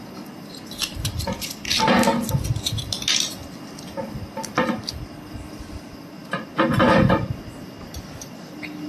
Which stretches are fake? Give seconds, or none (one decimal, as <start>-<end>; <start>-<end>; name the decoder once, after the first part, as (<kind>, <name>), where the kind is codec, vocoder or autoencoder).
none